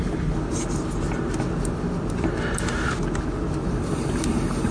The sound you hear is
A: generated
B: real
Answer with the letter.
B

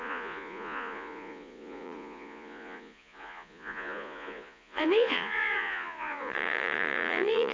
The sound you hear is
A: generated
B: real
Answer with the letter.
A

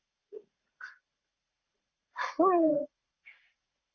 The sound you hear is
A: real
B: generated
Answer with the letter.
B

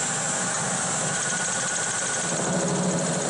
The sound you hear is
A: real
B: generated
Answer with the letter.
A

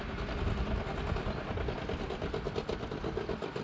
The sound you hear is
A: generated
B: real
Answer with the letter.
B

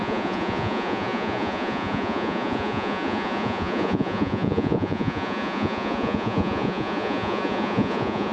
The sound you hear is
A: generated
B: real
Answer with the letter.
A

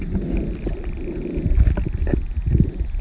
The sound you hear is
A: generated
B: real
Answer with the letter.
B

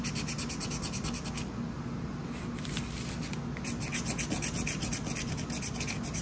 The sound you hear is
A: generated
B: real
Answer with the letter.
B